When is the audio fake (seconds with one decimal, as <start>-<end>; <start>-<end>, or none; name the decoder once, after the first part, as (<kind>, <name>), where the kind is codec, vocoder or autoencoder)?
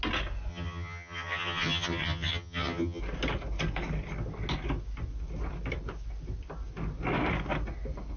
0.5-3.0 (vocoder, HiFi-GAN)